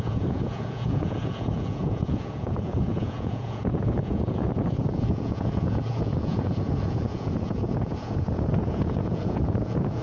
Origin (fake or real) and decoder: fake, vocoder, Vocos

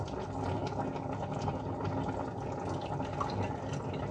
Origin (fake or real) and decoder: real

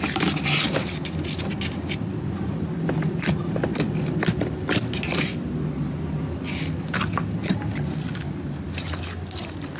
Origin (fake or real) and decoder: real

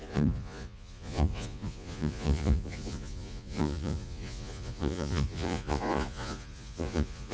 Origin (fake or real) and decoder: fake, vocoder, Vocos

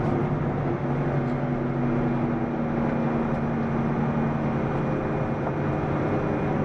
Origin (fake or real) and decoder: real